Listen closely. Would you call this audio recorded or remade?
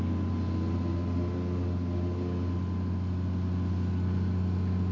recorded